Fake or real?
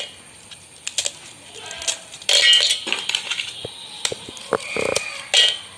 real